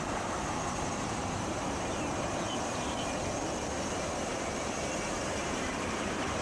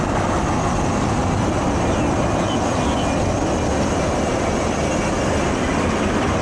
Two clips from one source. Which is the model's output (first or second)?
first